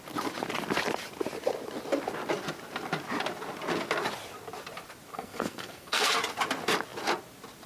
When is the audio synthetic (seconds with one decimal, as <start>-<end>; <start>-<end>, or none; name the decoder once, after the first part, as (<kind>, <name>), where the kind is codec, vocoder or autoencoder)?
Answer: 5.1-6.2 (codec, SNAC)